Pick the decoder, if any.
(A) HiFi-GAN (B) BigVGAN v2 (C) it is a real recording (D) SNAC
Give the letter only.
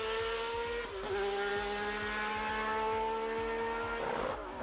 C